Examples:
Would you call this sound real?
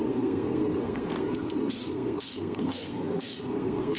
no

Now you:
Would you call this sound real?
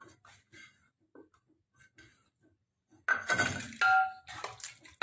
yes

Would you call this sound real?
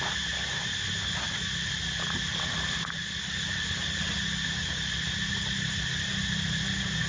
yes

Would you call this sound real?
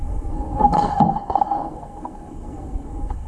no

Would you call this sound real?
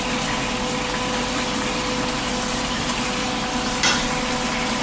yes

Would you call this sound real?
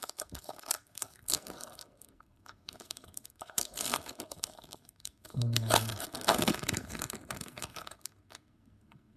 no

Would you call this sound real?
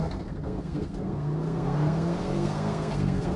no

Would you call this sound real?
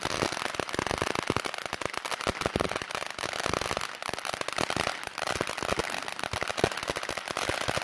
yes